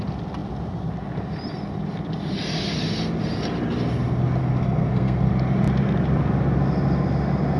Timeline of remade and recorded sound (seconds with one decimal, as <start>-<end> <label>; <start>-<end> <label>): 0.0-4.4 recorded; 4.4-5.3 remade; 5.3-7.6 recorded